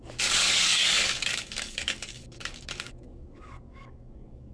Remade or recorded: remade